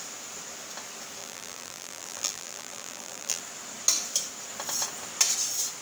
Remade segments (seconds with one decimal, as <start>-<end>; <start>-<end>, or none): 1.2-3.4